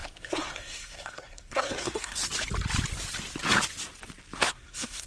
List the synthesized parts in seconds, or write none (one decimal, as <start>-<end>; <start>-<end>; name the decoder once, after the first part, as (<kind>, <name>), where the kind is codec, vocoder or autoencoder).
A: 0.0-2.2 (codec, SNAC); 4.4-5.1

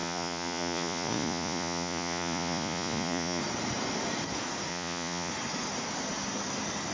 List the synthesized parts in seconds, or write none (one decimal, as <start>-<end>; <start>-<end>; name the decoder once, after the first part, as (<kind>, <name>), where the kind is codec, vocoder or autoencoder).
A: 0.0-3.4 (vocoder, Vocos); 4.7-5.3

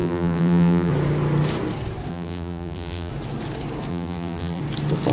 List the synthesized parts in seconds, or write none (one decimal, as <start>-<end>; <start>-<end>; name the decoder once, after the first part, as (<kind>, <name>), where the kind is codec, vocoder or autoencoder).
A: 0.0-0.9 (vocoder, BigVGAN v2); 2.1-3.1; 3.9-4.6

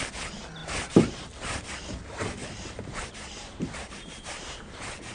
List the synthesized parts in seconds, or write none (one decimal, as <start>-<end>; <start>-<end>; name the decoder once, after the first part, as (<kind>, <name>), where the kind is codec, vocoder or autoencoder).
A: 0.6-1.3 (vocoder, BigVGAN v2); 2.4-5.1

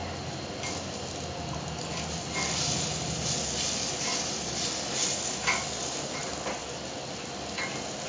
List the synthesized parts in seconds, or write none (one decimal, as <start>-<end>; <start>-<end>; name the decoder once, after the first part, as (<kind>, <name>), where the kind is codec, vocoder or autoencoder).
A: none

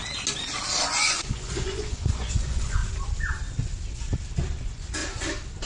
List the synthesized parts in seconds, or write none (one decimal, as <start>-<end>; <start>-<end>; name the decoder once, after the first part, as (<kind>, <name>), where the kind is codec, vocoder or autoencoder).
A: 0.8-2.8 (vocoder, Vocos); 4.6-5.0